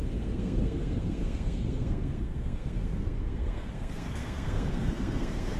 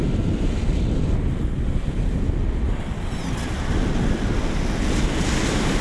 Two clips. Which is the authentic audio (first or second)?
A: second